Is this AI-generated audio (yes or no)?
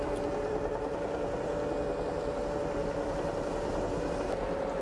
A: no